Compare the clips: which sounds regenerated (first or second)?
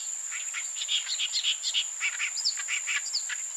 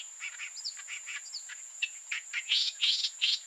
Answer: second